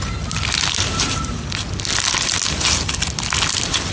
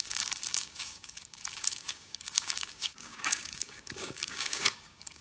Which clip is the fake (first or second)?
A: second